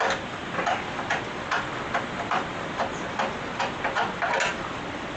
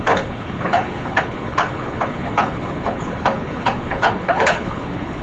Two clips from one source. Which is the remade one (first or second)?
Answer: second